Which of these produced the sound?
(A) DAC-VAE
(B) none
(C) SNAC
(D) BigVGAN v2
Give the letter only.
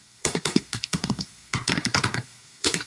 C